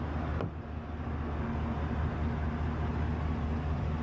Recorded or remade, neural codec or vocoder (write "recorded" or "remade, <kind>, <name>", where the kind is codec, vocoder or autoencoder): recorded